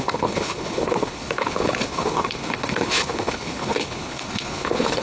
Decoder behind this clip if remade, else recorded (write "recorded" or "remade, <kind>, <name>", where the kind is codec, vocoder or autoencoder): remade, codec, HILCodec